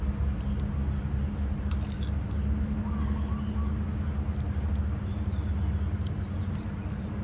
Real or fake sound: real